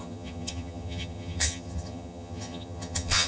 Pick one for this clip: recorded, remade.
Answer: remade